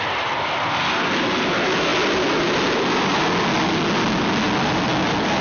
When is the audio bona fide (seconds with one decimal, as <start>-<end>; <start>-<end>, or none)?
0.0-5.4

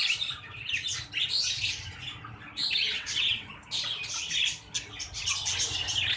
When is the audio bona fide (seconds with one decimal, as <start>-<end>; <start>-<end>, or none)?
0.0-2.9; 3.5-6.2

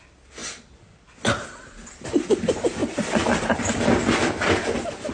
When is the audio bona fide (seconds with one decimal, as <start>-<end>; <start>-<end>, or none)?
0.0-5.1

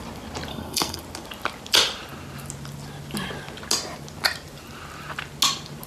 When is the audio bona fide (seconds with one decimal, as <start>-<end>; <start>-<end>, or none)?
0.0-0.5; 1.0-5.9

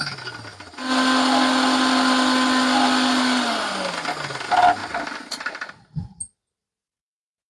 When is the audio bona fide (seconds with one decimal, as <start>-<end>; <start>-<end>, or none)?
0.0-4.8; 5.7-7.5

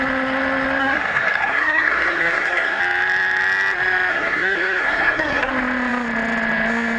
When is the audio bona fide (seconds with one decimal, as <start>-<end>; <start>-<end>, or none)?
0.0-0.8; 2.8-4.1; 5.5-7.0